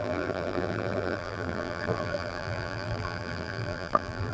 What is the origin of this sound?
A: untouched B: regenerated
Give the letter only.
B